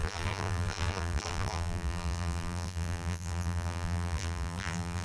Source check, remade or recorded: remade